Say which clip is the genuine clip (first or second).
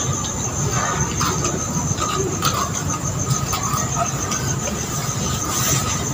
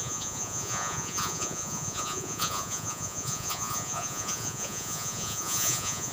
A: first